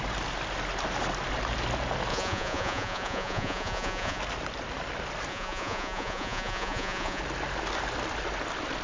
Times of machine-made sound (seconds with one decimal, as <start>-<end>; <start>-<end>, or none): 2.1-4.2; 5.3-7.2